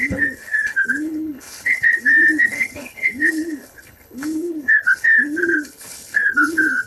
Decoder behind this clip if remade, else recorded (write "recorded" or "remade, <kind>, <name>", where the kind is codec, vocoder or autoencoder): remade, codec, HILCodec